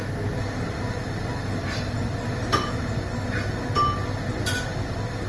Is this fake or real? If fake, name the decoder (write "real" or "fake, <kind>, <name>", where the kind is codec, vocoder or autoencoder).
real